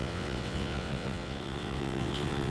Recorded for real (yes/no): no